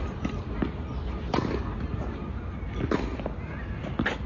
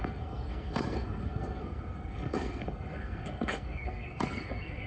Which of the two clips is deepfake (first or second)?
second